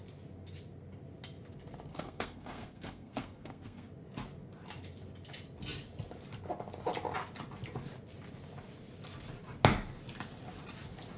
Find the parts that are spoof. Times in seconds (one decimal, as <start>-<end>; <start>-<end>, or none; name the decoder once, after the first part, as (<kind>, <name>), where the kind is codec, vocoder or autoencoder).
1.9-3.9 (codec, SNAC)